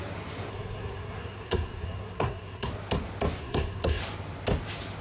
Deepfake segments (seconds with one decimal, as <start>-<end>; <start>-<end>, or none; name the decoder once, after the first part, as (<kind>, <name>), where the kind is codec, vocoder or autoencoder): 0.5-2.7 (codec, SNAC); 3.4-4.0